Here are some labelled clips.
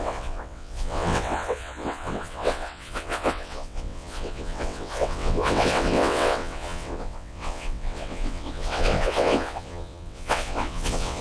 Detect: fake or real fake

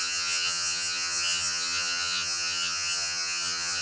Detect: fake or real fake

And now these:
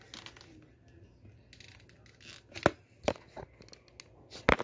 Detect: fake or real real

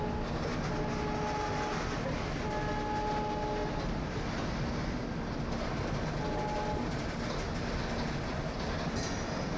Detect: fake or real real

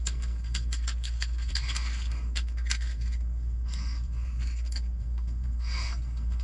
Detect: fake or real fake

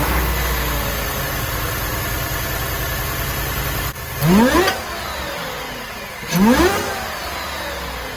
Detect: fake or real real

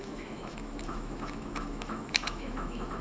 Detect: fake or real fake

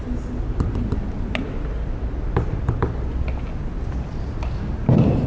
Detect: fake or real real